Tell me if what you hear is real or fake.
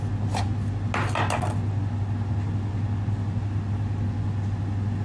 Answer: real